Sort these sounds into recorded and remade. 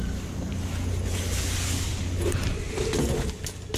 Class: recorded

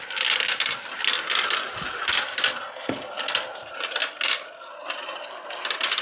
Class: recorded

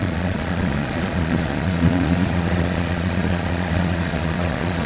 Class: remade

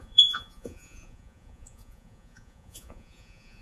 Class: remade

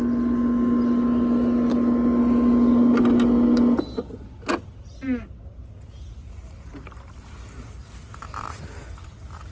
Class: recorded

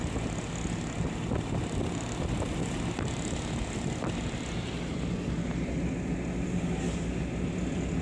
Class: recorded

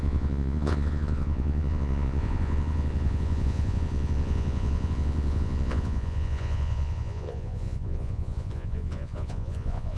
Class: remade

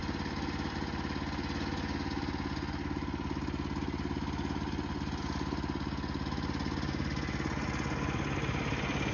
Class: recorded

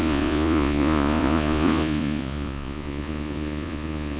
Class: remade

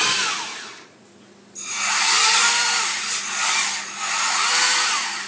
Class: recorded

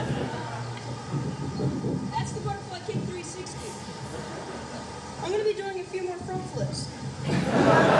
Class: recorded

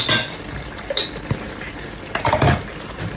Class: recorded